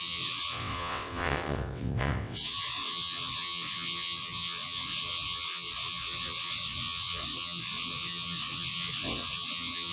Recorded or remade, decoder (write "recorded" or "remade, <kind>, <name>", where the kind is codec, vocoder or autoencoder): remade, vocoder, WaveNeXt